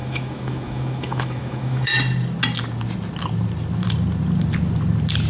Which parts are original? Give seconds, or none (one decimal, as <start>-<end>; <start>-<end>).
1.9-5.3